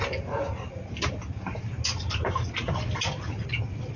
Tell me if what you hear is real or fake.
real